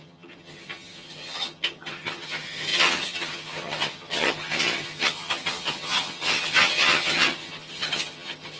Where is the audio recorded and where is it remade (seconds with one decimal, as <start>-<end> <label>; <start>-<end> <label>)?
0.0-8.6 remade